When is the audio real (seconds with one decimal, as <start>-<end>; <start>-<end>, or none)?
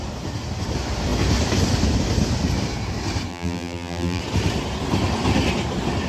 0.0-3.3; 4.2-6.1